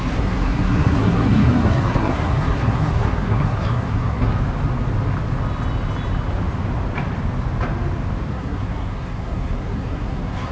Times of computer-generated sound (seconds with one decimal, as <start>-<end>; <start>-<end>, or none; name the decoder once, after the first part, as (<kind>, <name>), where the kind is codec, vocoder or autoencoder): 0.0-4.3 (codec, SNAC); 8.3-10.5